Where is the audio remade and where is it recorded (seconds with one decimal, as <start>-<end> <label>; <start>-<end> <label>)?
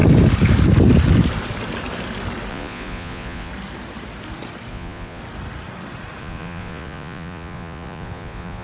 0.0-2.5 recorded; 2.5-3.5 remade; 3.5-4.7 recorded; 4.7-5.2 remade; 5.2-6.2 recorded; 6.2-8.6 remade